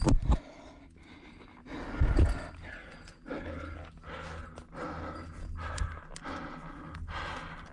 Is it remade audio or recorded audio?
recorded